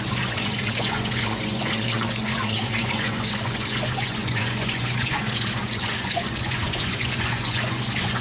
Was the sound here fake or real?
fake